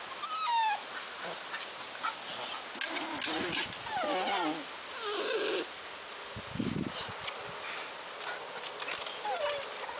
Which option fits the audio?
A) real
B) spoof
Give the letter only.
A